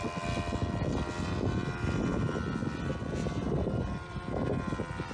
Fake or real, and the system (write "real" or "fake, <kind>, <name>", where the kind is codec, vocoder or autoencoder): real